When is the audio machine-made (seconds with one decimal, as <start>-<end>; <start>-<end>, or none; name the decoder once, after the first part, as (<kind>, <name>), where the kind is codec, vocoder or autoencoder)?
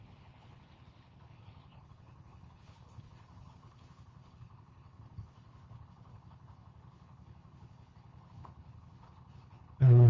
0.0-10.1 (codec, HILCodec)